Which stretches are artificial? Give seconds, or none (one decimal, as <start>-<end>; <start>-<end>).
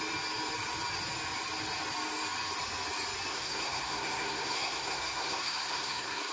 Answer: 3.3-6.3